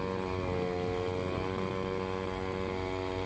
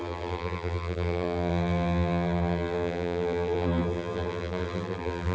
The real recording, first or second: first